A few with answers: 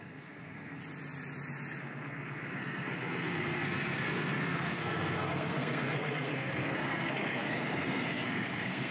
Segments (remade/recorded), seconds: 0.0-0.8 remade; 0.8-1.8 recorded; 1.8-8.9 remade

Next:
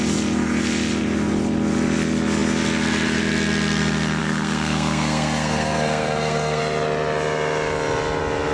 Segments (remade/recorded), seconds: 0.0-4.2 recorded; 4.2-6.6 remade; 6.6-8.5 recorded

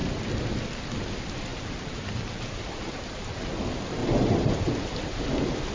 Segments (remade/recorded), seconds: 0.0-1.5 recorded; 1.5-3.6 remade; 3.6-4.0 recorded; 4.0-5.7 remade

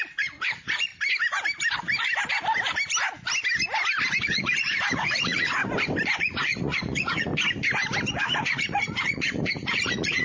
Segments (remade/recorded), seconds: 0.0-0.9 remade; 0.9-4.2 recorded; 4.2-5.6 remade; 5.6-6.2 recorded; 6.2-7.3 remade; 7.3-8.1 recorded; 8.1-10.2 remade

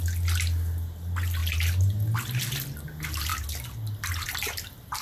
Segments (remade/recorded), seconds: 0.0-5.0 recorded

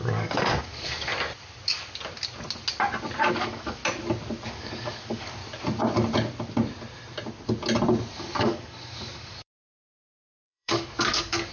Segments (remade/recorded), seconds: 0.0-1.1 remade; 1.1-3.3 recorded; 3.3-3.8 remade; 3.8-4.5 recorded; 4.5-5.4 remade; 5.4-8.1 recorded; 8.1-11.5 remade